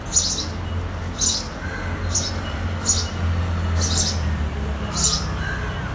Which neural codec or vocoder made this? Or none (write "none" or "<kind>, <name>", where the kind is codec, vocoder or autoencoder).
none